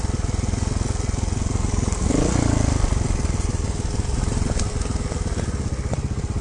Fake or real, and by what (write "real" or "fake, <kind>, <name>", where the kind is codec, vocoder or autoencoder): real